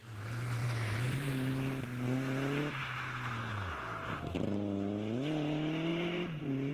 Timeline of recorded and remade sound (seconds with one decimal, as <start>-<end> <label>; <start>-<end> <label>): 0.0-0.6 recorded; 0.6-2.8 remade; 2.8-3.5 recorded; 3.5-4.2 remade; 4.2-5.9 recorded; 5.9-6.7 remade